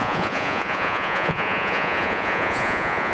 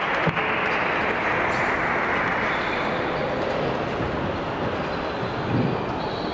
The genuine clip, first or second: second